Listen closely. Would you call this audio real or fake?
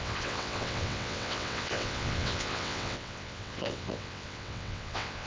fake